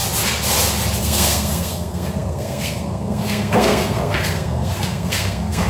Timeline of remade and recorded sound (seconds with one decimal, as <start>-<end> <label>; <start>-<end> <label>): 0.0-1.0 recorded; 1.0-5.7 remade